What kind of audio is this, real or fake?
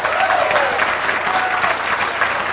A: real